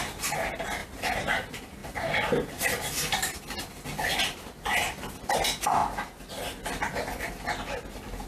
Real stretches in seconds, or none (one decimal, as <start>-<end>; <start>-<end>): 0.0-8.3